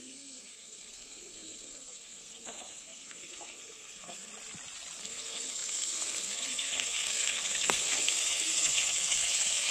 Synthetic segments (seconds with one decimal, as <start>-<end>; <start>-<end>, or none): 0.0-4.3; 5.0-9.7